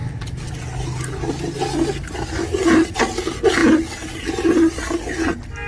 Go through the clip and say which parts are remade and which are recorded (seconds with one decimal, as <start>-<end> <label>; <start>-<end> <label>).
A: 0.0-5.7 recorded